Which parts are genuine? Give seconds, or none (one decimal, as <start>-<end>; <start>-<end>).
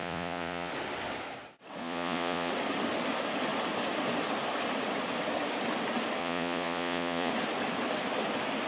0.7-1.8; 2.5-6.2; 7.3-8.7